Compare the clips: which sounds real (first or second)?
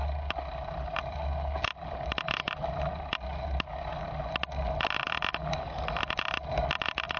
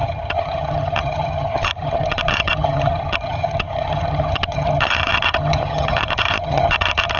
first